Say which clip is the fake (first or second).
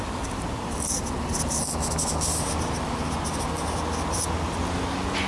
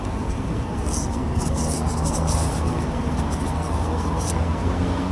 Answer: second